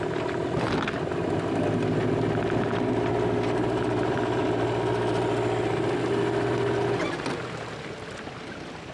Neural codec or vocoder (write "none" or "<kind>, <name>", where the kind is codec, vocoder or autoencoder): none